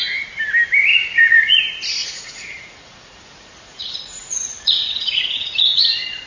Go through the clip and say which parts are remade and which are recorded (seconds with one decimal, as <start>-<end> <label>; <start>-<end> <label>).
0.0-0.9 recorded; 0.9-1.6 remade; 1.6-2.0 recorded; 2.0-5.8 remade; 5.8-6.3 recorded

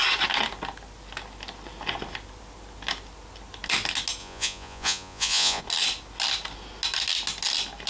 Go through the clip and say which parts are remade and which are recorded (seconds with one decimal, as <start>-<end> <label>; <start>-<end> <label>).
0.0-4.2 recorded; 4.2-5.6 remade; 5.6-7.9 recorded

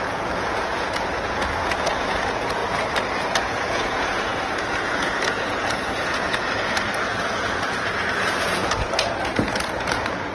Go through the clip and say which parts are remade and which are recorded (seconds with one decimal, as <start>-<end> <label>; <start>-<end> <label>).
0.0-2.6 remade; 2.6-3.2 recorded; 3.2-10.3 remade